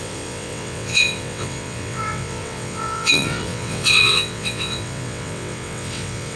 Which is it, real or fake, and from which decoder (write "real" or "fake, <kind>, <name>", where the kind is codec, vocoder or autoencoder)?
fake, vocoder, WaveNeXt